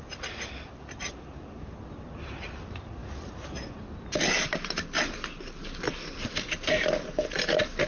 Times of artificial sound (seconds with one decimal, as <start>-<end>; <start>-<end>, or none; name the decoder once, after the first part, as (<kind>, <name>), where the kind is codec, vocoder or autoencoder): none